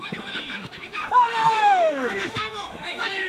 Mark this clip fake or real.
fake